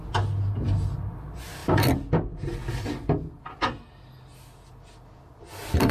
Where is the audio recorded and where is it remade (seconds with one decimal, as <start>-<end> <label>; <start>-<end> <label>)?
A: 0.0-5.9 recorded

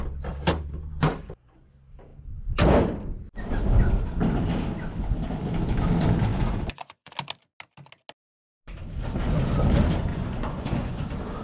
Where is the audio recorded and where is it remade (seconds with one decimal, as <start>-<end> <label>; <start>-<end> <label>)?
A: 0.0-6.3 recorded; 6.3-7.1 remade; 7.1-10.1 recorded; 10.1-11.0 remade; 11.0-11.4 recorded

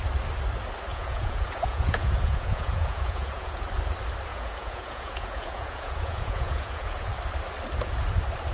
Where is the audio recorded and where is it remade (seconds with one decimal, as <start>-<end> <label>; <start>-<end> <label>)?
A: 0.0-0.9 recorded; 0.9-3.6 remade; 3.6-4.3 recorded; 4.3-7.1 remade; 7.1-8.5 recorded

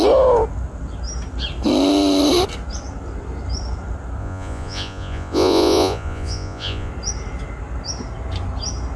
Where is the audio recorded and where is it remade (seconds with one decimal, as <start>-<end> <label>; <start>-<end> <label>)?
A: 0.0-4.2 recorded; 4.2-6.9 remade; 6.9-9.0 recorded

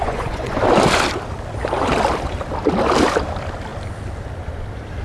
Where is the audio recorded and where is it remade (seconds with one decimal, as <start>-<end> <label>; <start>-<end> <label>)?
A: 0.0-0.6 remade; 0.6-5.0 recorded

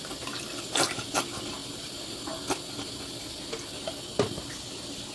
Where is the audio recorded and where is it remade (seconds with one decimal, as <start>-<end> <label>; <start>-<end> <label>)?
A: 0.0-5.1 recorded